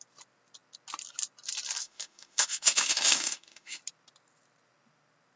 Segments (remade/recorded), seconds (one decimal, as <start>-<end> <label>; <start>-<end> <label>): 0.0-1.8 recorded; 1.8-3.8 remade; 3.8-5.4 recorded